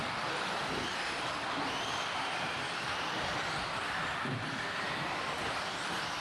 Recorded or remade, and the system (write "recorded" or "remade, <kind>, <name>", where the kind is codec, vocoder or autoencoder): remade, vocoder, BigVGAN v2